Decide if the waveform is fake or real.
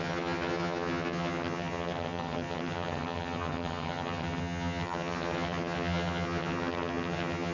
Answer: fake